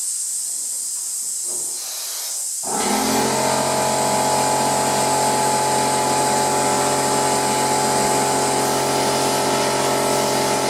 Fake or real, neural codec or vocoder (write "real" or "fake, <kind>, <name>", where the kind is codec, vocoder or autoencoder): real